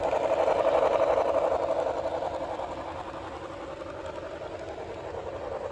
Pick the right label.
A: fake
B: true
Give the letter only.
B